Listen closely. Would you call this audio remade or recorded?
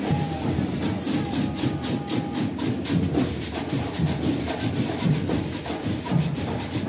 recorded